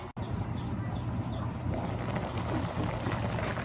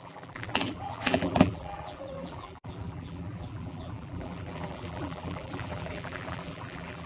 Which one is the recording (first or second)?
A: first